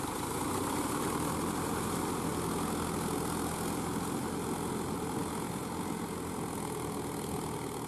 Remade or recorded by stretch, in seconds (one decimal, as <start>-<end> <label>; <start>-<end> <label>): 0.0-7.9 recorded